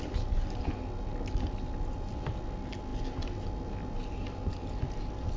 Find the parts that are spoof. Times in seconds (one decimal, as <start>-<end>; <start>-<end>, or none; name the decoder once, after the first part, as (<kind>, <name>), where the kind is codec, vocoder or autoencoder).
none